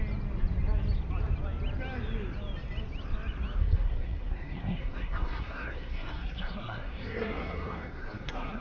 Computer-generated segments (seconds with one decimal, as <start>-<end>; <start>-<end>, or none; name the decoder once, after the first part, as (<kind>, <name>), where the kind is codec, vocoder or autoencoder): 3.6-8.6 (codec, SNAC)